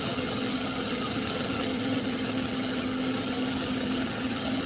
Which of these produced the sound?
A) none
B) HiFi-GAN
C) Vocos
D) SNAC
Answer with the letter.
B